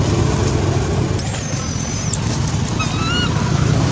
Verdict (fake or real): real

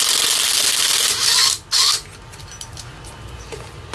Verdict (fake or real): real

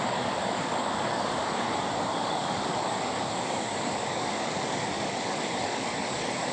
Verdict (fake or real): fake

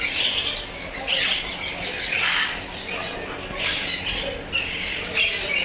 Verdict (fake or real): real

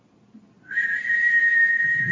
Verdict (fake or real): real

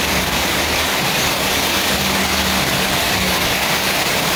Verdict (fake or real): fake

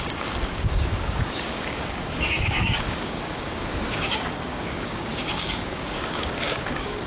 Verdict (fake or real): fake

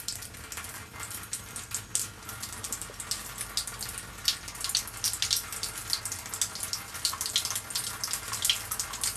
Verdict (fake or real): real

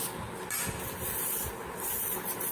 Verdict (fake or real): real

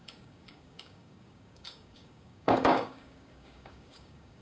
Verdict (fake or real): fake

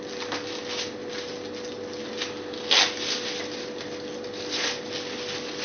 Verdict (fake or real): real